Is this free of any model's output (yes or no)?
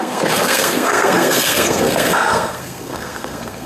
no